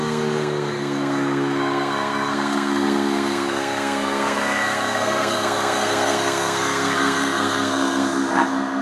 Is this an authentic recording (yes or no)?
no